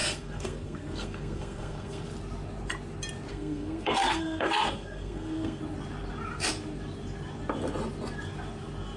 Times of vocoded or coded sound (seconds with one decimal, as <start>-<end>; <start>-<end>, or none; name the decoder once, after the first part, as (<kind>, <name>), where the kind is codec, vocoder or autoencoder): 0.0-2.1 (codec, SNAC); 3.3-5.6